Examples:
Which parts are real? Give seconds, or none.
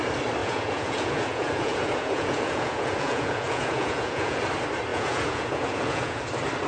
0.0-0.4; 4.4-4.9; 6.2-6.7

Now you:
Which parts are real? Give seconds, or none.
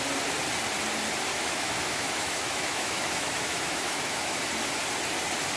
0.0-1.3; 4.4-5.6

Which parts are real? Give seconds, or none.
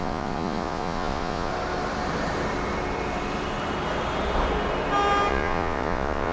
1.5-5.3